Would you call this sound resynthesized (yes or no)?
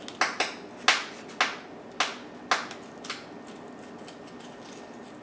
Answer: no